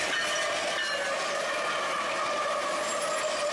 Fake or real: real